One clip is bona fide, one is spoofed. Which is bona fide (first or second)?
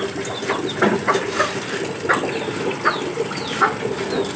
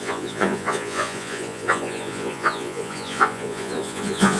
first